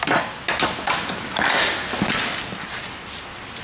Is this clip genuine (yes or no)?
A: yes